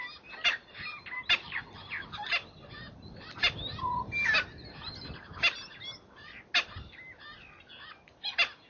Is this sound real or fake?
real